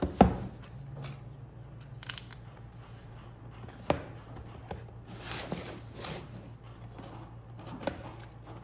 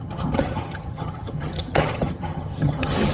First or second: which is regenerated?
second